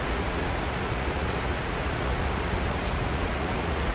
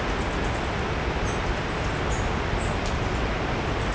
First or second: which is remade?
first